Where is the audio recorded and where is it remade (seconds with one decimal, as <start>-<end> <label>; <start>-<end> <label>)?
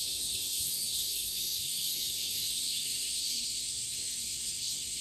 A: 0.0-5.0 remade